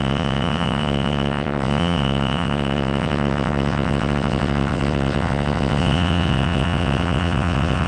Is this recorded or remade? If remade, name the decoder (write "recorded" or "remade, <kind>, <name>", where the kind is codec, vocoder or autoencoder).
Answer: remade, vocoder, WaveNeXt